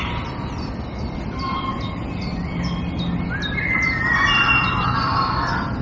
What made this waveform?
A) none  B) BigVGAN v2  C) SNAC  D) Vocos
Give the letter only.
A